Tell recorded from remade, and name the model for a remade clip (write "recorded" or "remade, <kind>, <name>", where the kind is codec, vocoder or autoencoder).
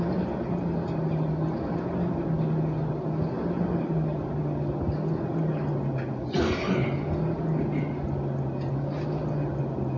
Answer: recorded